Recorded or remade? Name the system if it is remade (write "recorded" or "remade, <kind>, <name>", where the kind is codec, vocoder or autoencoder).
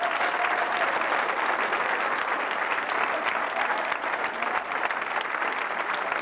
recorded